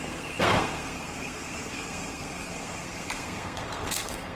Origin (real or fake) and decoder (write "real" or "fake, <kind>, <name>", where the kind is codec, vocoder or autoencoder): fake, codec, SNAC